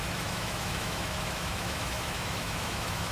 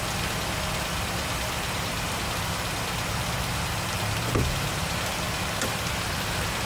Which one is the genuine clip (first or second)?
second